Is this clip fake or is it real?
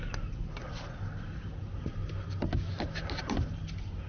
real